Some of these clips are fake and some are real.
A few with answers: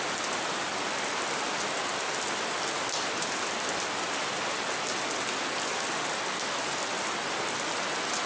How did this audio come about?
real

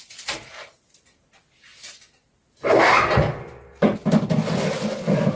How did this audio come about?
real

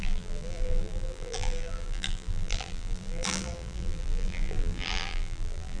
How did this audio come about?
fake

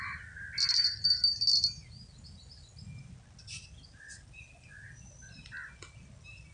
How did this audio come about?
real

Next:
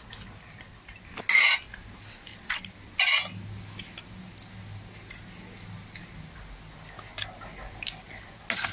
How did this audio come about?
real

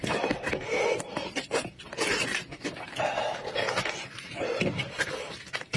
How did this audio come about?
fake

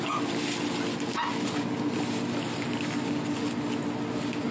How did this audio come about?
real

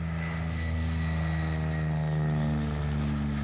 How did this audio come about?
real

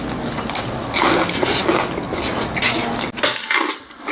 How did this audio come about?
real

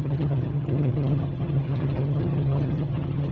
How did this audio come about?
fake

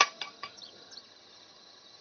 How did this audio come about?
fake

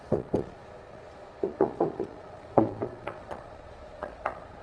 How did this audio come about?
fake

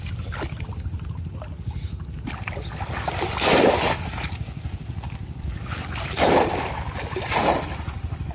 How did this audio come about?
real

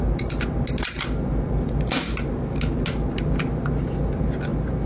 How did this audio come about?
real